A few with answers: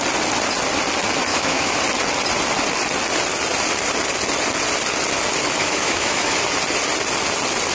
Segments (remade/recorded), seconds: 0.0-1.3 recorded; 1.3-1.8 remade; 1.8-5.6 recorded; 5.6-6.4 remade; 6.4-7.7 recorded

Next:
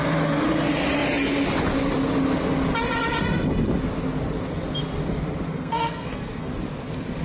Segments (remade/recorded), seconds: 0.0-5.5 recorded; 5.5-6.5 remade; 6.5-7.2 recorded

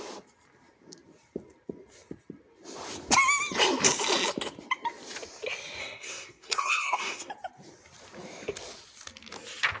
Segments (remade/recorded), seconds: 0.0-5.8 recorded; 5.8-7.3 remade; 7.3-9.8 recorded

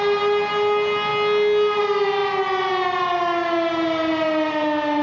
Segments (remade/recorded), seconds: 0.0-5.0 recorded